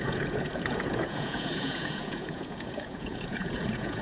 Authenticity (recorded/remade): remade